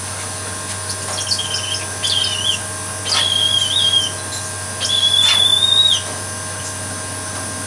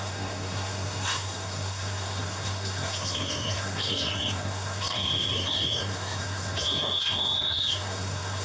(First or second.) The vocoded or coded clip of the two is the second